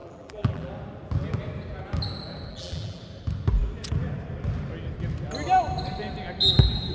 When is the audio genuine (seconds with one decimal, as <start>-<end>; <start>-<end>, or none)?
0.7-2.5; 3.0-6.9